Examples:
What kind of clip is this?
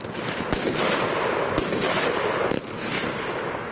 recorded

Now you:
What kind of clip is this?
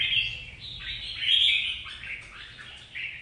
recorded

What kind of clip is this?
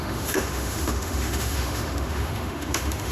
remade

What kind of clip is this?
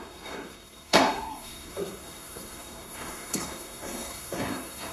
remade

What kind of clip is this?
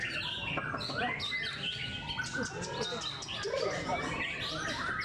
recorded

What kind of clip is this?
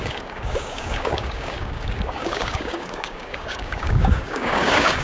remade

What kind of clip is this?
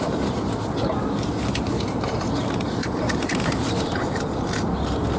remade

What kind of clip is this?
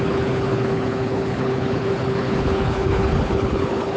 remade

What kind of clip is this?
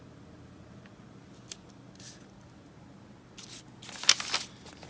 recorded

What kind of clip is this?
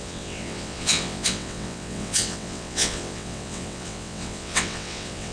remade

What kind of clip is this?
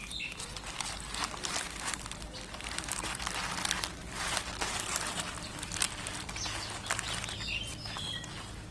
recorded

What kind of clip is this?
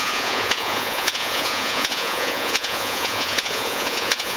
remade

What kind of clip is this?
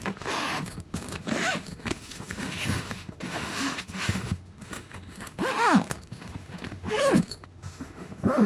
remade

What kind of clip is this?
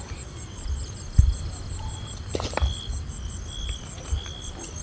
recorded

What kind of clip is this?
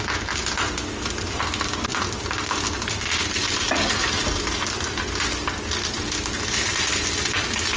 recorded